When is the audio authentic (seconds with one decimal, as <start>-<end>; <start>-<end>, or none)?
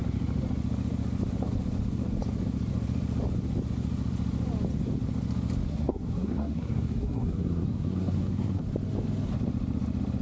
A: 0.0-5.7; 8.6-10.2